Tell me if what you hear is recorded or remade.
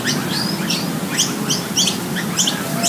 recorded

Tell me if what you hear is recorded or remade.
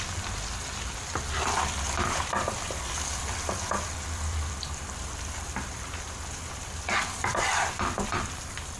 remade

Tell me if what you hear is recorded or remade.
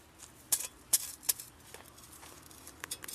recorded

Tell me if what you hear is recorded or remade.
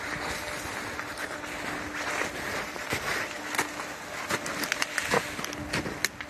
recorded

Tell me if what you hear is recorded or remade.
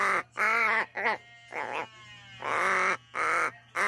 recorded